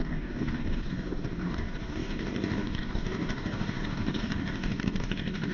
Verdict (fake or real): fake